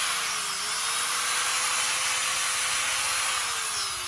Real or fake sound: real